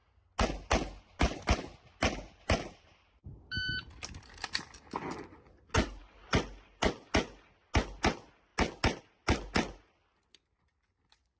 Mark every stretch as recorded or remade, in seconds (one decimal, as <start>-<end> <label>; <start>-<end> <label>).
0.0-11.4 recorded